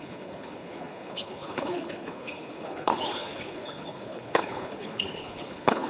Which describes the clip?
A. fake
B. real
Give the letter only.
A